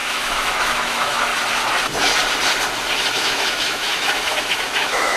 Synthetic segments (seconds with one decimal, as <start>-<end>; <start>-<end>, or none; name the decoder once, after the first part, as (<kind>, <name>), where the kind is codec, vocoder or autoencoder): 0.0-1.3 (autoencoder, DAC-VAE); 3.1-5.2